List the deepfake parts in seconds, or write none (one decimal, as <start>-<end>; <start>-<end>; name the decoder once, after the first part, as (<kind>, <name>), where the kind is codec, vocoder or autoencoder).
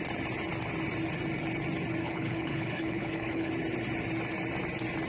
2.0-3.5 (codec, HILCodec)